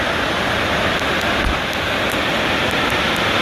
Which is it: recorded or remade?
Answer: recorded